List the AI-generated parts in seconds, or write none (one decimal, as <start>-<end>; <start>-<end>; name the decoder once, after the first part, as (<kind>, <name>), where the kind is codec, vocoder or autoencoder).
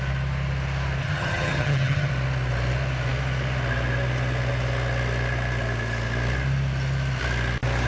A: 1.0-2.1 (vocoder, HiFi-GAN)